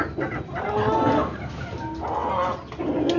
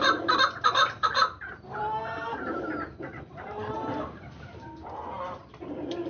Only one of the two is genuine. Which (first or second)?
first